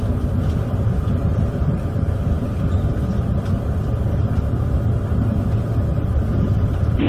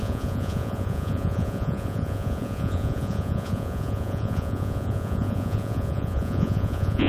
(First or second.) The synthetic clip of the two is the second